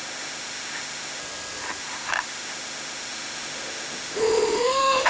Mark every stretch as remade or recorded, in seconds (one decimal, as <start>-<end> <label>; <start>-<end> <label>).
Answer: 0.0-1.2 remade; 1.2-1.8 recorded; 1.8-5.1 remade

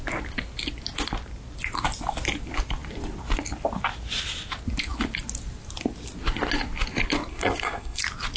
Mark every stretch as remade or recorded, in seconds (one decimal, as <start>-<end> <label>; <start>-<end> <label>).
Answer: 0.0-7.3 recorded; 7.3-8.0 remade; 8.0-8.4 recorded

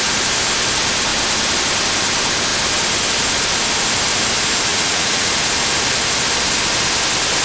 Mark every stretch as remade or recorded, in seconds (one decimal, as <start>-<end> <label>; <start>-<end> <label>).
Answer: 0.0-4.7 recorded; 4.7-5.3 remade; 5.3-7.4 recorded